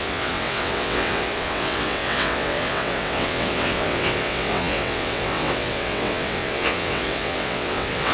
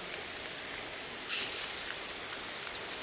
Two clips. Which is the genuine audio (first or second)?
second